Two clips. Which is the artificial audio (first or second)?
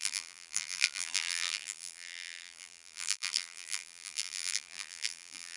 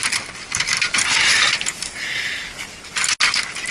first